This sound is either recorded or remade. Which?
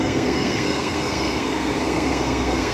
remade